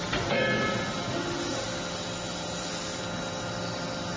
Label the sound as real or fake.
real